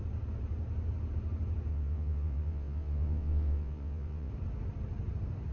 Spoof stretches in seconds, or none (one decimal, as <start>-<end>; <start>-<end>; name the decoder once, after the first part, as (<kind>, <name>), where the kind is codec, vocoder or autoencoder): 1.7-4.3 (vocoder, WaveNeXt)